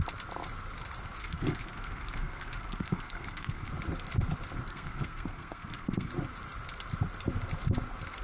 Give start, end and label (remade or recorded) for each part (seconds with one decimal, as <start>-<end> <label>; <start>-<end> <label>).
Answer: 0.0-1.2 recorded; 1.2-3.7 remade; 3.7-4.7 recorded; 4.7-6.1 remade; 6.1-8.2 recorded